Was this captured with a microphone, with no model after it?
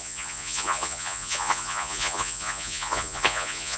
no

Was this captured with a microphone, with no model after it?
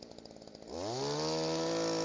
yes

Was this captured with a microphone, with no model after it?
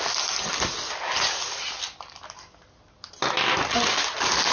yes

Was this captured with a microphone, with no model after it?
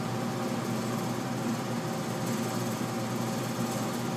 yes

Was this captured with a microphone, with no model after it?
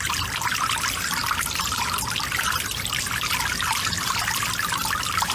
yes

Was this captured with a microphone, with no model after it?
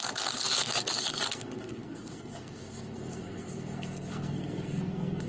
no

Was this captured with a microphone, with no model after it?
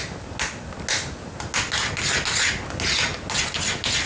yes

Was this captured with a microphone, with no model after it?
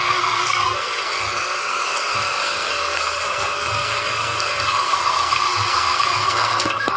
no